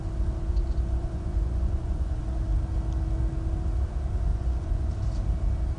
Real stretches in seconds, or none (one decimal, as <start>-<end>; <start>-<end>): 0.0-0.4; 2.2-4.3; 4.9-5.8